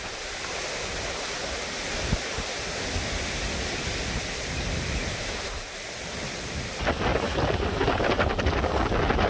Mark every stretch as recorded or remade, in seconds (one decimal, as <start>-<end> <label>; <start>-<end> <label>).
0.0-9.3 recorded